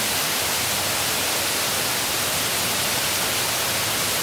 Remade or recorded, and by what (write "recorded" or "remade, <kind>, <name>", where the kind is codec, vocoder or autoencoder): recorded